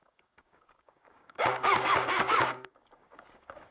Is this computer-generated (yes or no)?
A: yes